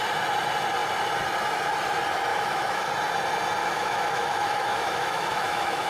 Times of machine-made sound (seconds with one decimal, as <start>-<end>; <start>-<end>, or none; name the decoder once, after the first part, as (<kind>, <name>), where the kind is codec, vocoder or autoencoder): 2.3-2.9 (autoencoder, DAC-VAE); 3.6-5.9